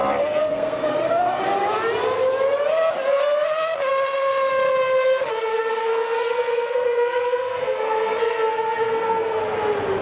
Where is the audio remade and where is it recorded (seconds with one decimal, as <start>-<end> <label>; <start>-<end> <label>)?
0.0-0.4 recorded; 0.4-1.4 remade; 1.4-5.5 recorded; 5.5-9.4 remade; 9.4-10.0 recorded